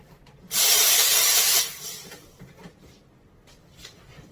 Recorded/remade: remade